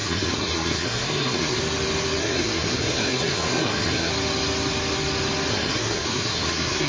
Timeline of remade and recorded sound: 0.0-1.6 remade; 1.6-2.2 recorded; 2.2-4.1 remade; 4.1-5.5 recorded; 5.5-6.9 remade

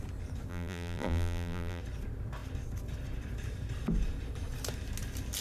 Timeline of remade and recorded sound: 0.0-0.5 recorded; 0.5-1.8 remade; 1.8-5.4 recorded

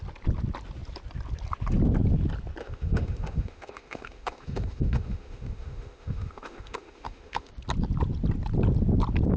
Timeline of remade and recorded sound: 0.0-2.6 recorded; 2.6-7.5 remade; 7.5-9.4 recorded

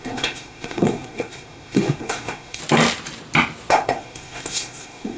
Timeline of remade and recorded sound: 0.0-2.6 remade; 2.6-3.7 recorded; 3.7-5.2 remade

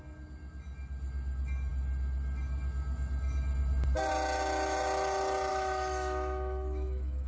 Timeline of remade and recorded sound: 0.0-5.5 recorded; 5.5-7.3 remade

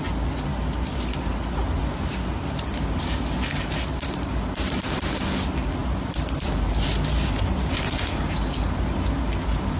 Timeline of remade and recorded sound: 0.0-9.8 recorded